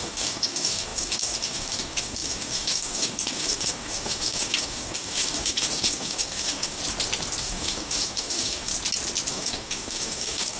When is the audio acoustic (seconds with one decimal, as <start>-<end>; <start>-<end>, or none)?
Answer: 6.8-7.4; 8.7-9.3